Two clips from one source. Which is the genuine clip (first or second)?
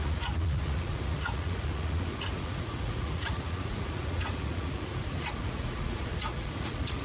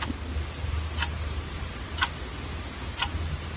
second